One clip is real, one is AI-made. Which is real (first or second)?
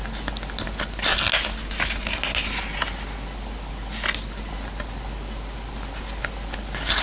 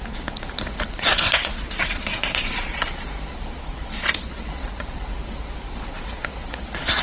first